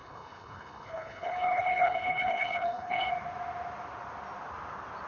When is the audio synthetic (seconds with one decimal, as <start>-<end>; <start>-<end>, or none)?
0.0-3.1